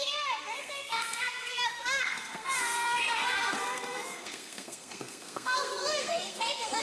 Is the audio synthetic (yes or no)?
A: yes